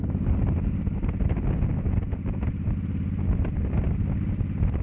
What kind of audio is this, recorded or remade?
recorded